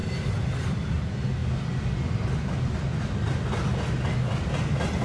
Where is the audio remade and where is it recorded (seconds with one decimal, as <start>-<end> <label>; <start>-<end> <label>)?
0.0-5.0 recorded